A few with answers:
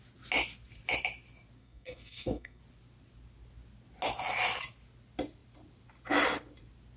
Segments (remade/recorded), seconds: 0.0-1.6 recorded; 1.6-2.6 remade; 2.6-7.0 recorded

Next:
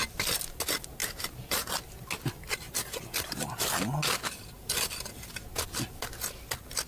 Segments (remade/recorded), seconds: 0.0-6.9 recorded

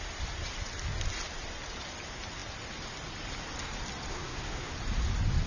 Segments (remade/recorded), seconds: 0.0-4.1 recorded; 4.1-4.7 remade; 4.7-5.5 recorded

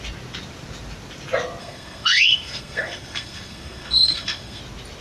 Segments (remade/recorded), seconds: 0.0-1.6 recorded; 1.6-4.6 remade; 4.6-5.0 recorded

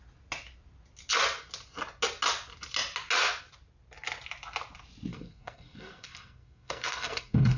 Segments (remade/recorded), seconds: 0.0-5.1 recorded; 5.1-7.6 remade

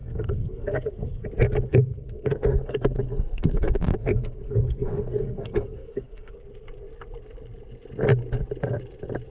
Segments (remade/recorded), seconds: 0.0-1.2 remade; 1.2-1.7 recorded; 1.7-6.3 remade; 6.3-9.3 recorded